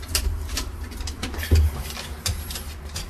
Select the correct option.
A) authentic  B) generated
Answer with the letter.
B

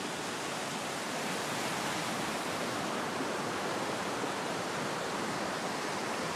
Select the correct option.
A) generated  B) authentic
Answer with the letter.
B